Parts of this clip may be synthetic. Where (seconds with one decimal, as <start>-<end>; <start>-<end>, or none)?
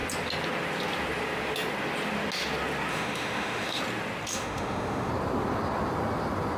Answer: 2.9-3.8; 4.3-5.1